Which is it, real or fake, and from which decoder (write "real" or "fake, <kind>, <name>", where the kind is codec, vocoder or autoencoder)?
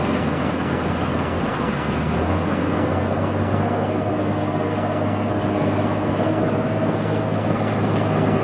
fake, codec, SNAC